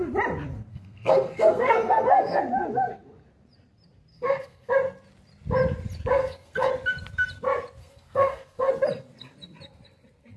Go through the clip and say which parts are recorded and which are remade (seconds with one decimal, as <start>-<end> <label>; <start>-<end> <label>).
0.0-0.7 recorded; 0.7-2.4 remade; 2.4-4.1 recorded; 4.1-4.7 remade; 4.7-6.1 recorded; 6.1-6.7 remade; 6.7-7.8 recorded; 7.8-8.7 remade; 8.7-10.4 recorded